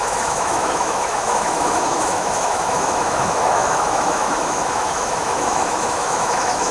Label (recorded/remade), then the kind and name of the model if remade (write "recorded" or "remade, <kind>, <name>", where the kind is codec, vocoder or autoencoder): remade, autoencoder, DAC-VAE